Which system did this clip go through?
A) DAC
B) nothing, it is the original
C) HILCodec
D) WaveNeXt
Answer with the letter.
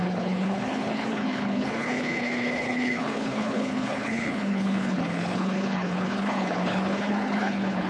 C